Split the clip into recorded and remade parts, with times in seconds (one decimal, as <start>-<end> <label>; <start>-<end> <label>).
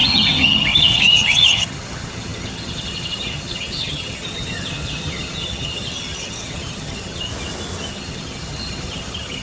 0.0-7.3 remade; 7.3-7.9 recorded; 7.9-9.4 remade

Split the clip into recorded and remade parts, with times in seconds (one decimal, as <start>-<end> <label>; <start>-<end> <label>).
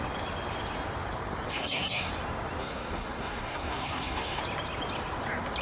0.0-1.5 recorded; 1.5-2.1 remade; 2.1-2.6 recorded; 2.6-4.4 remade; 4.4-5.6 recorded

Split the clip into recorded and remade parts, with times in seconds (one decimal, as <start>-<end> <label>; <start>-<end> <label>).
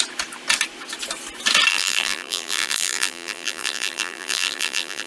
0.0-1.7 recorded; 1.7-5.1 remade